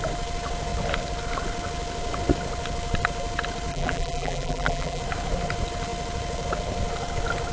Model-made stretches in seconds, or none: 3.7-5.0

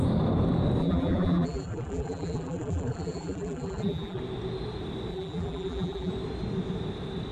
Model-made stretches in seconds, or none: 0.8-4.2; 5.1-6.1